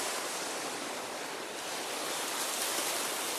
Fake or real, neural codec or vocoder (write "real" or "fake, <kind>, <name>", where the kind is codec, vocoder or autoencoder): fake, vocoder, BigVGAN v2